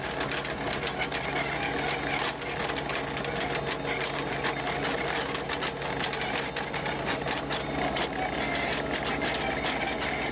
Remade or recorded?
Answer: recorded